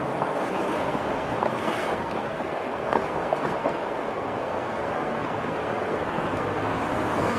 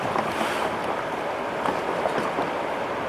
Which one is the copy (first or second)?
first